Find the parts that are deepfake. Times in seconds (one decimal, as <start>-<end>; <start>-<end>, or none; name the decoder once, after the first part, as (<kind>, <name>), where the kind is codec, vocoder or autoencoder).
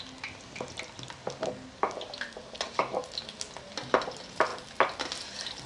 none